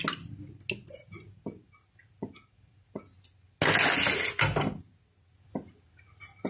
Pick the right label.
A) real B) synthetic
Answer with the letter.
A